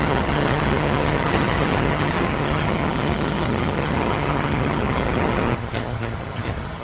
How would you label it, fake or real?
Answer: fake